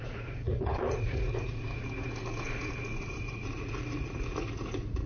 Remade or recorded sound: remade